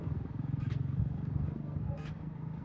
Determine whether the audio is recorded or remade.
remade